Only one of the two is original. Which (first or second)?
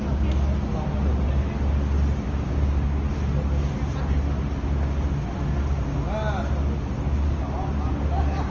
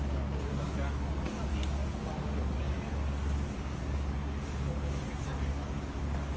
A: first